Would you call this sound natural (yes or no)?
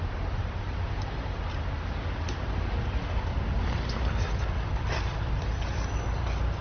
yes